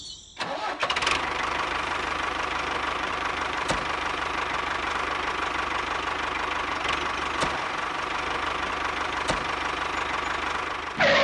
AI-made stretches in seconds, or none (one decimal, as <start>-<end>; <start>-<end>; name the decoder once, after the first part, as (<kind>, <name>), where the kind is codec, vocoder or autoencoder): 0.8-5.3 (vocoder, BigVGAN v2)